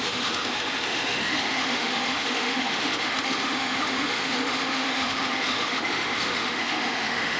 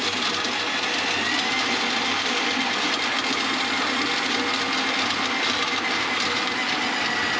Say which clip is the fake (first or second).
first